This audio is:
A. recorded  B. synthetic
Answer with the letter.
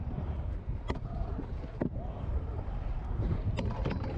B